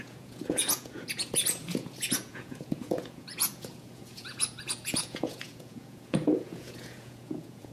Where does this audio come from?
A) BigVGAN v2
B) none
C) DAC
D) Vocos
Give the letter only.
D